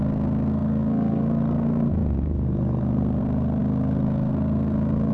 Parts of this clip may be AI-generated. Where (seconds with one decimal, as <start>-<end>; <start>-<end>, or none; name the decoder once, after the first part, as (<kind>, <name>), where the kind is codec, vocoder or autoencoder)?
0.0-5.1 (codec, SNAC)

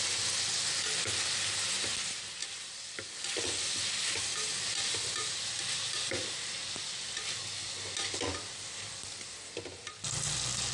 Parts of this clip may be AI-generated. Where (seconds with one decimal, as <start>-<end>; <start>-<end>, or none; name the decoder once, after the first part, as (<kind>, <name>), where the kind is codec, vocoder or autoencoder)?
none